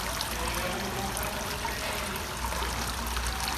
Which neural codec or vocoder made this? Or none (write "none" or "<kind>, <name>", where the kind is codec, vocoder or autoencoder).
none